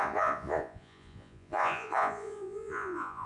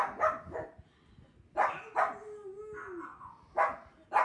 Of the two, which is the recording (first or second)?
second